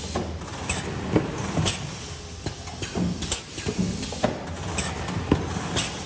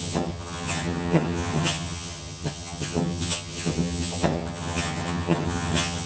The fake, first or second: second